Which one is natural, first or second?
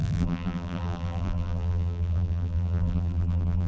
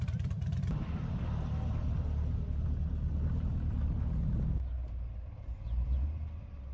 second